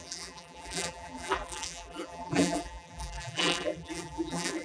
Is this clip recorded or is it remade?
remade